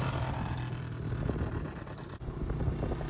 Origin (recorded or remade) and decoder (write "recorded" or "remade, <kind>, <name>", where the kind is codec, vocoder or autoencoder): recorded